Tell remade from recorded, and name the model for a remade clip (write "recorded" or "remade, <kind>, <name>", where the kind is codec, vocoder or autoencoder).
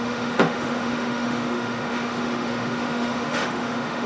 remade, autoencoder, DAC-VAE